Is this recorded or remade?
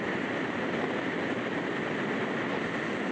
recorded